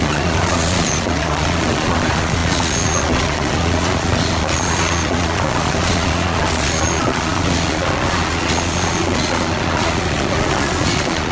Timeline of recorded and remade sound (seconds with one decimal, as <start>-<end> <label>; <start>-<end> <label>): 0.0-11.3 remade